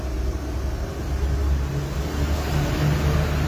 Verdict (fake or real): real